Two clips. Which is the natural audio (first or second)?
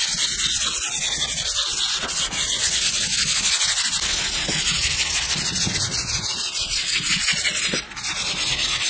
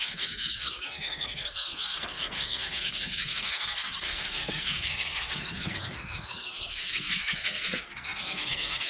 first